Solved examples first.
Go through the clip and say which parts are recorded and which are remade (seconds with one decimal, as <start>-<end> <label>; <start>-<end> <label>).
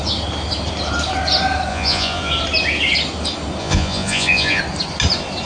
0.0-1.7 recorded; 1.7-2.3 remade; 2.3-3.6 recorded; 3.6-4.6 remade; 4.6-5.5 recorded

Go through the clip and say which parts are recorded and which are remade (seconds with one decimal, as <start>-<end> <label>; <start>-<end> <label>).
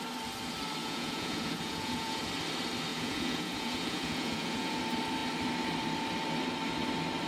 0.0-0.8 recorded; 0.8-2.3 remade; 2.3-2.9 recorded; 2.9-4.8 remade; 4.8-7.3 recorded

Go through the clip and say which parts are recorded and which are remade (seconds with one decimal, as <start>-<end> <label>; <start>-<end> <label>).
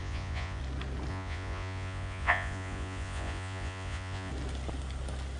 0.0-0.6 remade; 0.6-1.1 recorded; 1.1-4.3 remade; 4.3-5.4 recorded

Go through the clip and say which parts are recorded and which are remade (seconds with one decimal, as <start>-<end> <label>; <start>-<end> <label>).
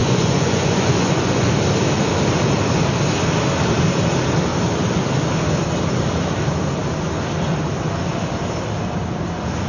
0.0-1.5 remade; 1.5-9.7 recorded